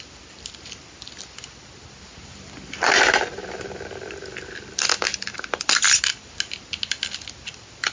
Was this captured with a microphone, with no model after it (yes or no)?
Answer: yes